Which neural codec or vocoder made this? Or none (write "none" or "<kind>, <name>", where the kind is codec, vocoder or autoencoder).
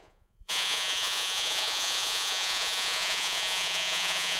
vocoder, Vocos